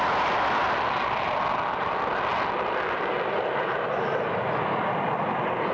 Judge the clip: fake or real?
real